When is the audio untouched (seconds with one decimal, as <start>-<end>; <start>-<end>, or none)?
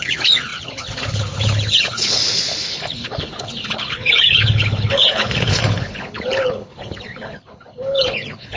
none